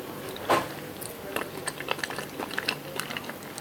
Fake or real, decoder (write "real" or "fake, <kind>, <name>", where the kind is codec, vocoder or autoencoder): real